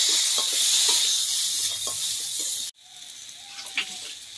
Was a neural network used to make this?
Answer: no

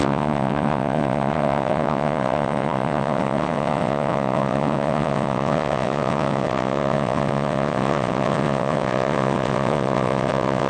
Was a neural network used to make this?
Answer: yes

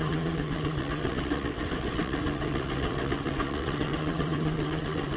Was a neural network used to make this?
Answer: yes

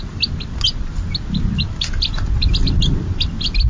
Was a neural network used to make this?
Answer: no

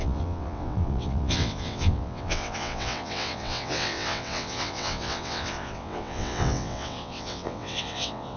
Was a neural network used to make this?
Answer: yes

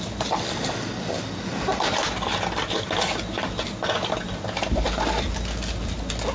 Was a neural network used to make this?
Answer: no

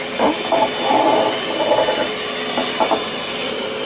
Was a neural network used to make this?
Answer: no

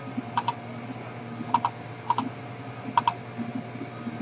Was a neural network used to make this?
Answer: no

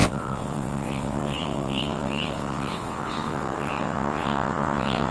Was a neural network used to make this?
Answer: yes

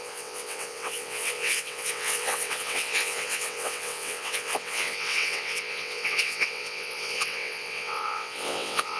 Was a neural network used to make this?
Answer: yes